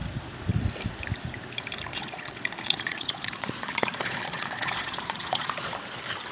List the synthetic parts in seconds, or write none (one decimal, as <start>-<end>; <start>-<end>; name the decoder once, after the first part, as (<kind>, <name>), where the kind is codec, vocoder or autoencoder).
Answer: 1.9-5.7 (vocoder, Vocos)